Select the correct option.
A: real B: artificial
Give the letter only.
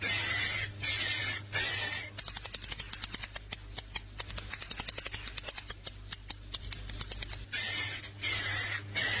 A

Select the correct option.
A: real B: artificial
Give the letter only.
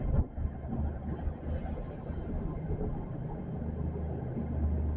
A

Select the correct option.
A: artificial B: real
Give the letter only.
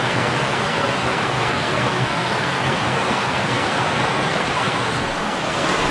A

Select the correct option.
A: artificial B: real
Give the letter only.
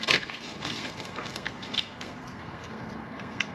A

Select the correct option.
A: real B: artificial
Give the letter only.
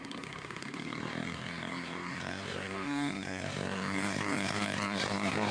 B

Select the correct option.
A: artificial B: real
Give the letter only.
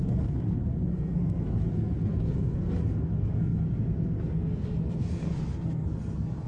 A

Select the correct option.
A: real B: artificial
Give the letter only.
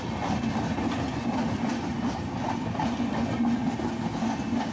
A